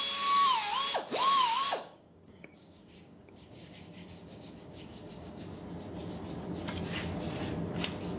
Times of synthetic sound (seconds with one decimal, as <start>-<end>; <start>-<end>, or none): 1.2-5.4